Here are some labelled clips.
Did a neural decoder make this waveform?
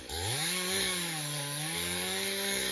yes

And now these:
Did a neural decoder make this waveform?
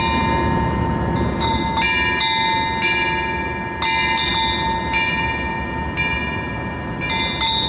no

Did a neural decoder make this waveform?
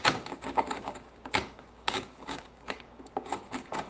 yes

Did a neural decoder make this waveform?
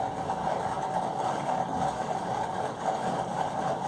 yes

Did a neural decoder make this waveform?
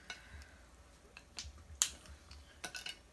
no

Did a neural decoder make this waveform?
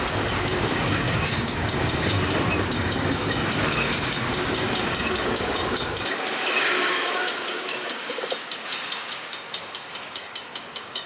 yes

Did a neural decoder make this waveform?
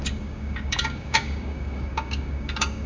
yes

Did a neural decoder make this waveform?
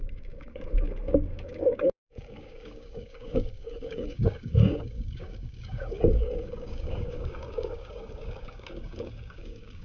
yes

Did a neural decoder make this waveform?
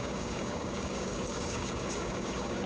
yes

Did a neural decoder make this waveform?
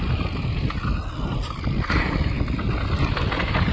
no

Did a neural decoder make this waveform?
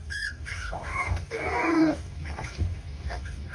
yes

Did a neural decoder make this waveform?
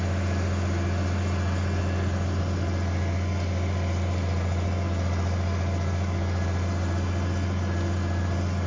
no